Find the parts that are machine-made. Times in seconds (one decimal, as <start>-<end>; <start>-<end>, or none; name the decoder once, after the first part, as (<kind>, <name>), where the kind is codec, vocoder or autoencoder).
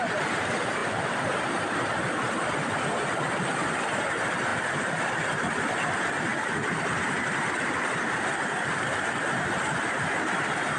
none